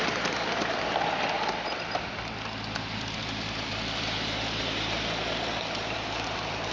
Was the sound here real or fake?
real